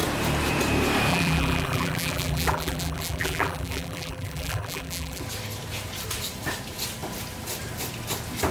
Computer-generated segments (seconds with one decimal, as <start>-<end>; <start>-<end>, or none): 1.1-5.2